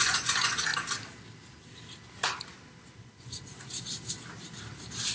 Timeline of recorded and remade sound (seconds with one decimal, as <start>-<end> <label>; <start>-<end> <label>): 0.0-0.7 remade; 0.7-3.0 recorded; 3.0-3.7 remade; 3.7-5.1 recorded